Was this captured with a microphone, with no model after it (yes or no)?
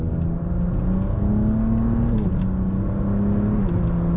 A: yes